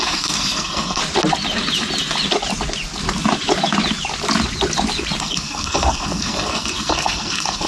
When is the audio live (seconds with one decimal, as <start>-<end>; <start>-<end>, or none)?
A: 1.0-5.2